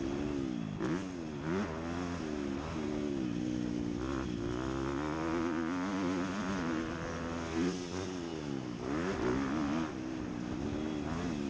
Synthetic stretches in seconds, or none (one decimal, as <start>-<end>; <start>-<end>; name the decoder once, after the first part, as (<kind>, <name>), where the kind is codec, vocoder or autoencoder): none